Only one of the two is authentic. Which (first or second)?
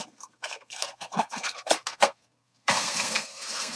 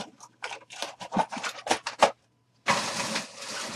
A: second